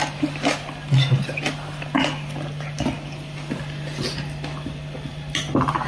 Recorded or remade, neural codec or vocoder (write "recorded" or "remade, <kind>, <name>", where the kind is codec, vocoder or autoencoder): recorded